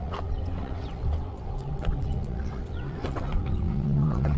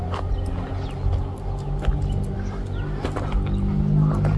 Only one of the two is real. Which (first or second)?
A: second